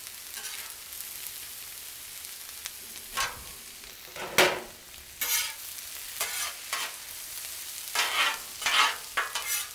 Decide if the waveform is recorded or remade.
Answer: recorded